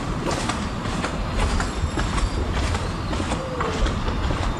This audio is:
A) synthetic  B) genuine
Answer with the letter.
B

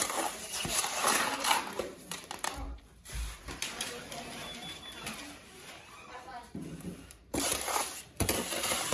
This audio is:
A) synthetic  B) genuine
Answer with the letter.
A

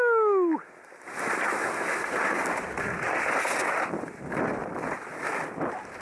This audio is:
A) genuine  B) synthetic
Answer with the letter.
A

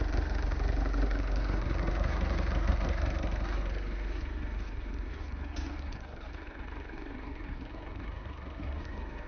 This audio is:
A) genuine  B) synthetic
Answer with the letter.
B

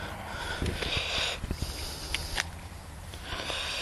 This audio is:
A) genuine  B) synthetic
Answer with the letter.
A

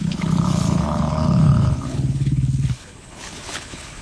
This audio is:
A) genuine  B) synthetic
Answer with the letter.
B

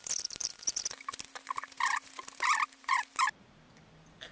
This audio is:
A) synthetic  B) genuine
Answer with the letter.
A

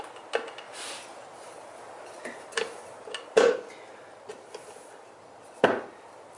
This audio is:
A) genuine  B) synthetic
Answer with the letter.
A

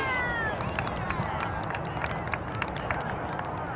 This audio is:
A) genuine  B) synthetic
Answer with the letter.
A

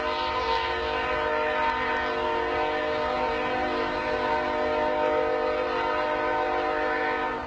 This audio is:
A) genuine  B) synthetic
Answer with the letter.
A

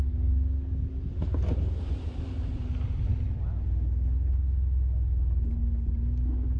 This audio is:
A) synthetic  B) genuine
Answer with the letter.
B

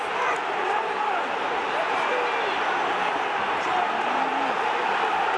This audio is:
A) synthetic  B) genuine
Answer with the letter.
B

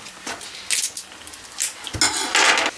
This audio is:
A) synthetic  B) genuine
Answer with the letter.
B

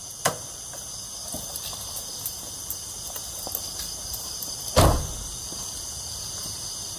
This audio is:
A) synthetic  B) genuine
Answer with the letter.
B